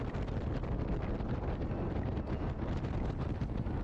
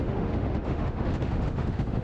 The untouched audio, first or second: first